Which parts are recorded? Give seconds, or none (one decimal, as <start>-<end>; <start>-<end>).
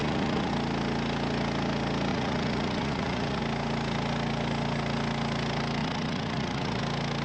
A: 0.5-2.1; 3.4-5.8; 6.8-7.2